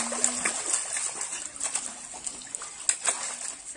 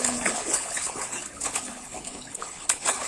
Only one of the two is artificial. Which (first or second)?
second